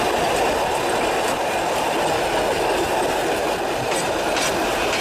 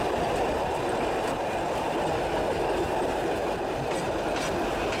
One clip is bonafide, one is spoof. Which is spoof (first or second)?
second